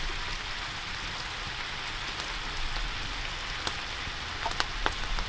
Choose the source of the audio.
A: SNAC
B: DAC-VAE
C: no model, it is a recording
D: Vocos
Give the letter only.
C